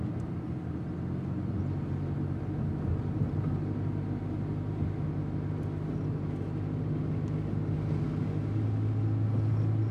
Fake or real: real